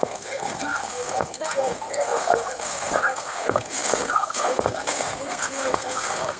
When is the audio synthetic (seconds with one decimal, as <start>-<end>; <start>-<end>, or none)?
0.0-6.4

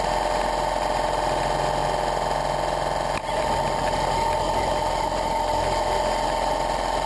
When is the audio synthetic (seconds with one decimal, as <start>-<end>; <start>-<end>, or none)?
none

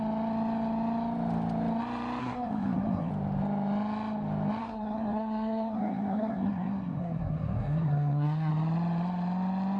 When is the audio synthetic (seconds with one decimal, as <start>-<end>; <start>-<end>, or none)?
2.2-3.1; 4.6-8.5

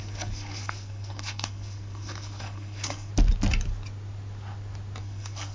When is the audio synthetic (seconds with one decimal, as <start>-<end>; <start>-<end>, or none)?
0.0-3.1; 5.0-5.5

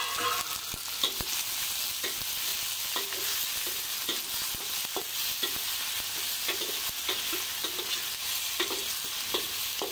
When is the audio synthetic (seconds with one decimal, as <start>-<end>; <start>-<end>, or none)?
none